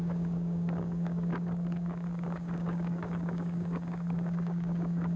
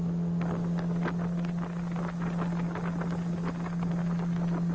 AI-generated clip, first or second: first